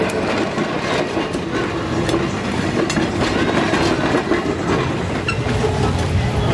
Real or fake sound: real